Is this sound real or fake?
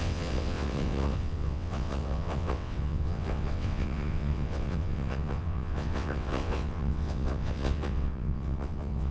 fake